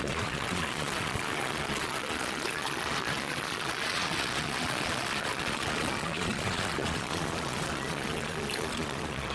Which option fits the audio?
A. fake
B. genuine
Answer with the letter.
A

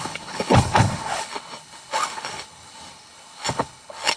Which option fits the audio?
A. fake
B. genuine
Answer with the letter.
A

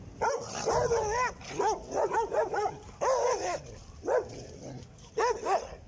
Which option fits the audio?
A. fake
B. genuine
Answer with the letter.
B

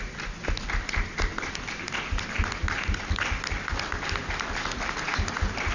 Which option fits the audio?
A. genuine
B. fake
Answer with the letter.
A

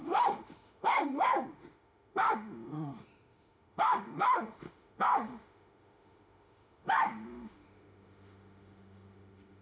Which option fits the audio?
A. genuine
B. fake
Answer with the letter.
B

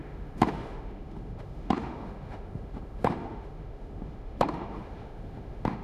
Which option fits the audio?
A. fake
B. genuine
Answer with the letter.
A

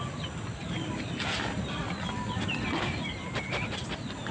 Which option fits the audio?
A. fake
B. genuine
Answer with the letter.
B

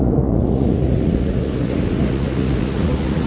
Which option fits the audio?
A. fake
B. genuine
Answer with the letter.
A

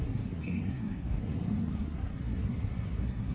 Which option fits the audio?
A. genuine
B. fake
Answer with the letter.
B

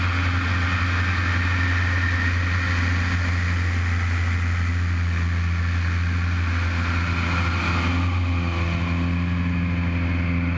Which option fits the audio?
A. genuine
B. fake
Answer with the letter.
A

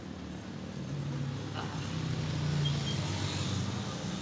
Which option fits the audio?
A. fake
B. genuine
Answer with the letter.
B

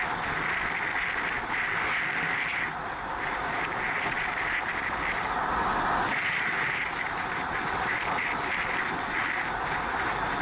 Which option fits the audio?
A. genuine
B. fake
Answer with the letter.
A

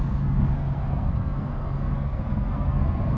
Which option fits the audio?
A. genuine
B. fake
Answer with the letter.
B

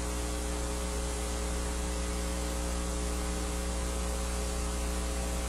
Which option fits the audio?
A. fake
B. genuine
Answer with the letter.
B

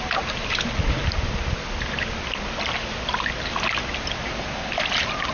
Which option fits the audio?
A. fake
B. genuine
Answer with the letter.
B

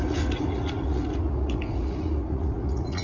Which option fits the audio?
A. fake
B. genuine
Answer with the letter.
A